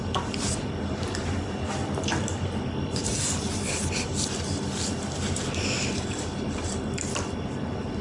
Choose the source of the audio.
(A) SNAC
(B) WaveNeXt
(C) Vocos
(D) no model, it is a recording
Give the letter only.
D